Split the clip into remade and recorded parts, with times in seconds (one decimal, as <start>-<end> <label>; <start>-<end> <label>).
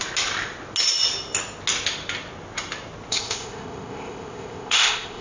0.0-3.1 recorded; 3.1-5.2 remade